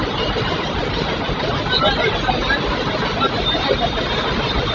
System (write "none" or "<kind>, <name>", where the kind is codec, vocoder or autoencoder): none